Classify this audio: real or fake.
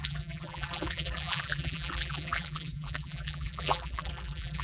fake